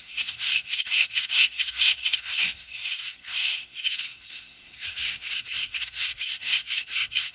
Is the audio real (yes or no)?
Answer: no